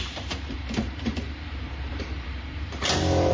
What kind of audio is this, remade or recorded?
remade